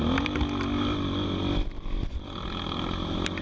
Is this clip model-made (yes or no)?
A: no